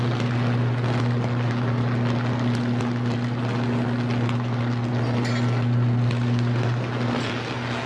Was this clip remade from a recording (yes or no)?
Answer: no